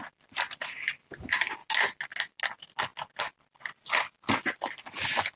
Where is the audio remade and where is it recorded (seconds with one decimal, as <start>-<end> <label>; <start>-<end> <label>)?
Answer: 0.0-5.4 recorded